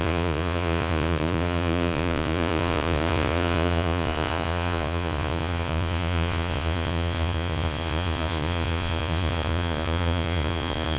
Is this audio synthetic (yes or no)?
yes